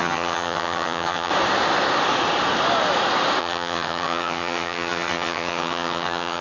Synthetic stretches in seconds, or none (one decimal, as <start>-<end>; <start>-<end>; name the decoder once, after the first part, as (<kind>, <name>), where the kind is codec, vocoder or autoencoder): 0.0-1.3 (vocoder, HiFi-GAN); 3.4-6.4